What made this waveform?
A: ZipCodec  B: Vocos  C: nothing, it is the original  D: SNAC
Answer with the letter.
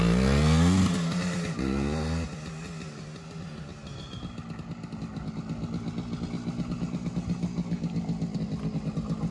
C